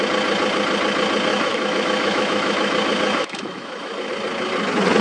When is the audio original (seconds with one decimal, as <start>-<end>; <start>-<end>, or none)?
0.0-1.3; 4.1-5.0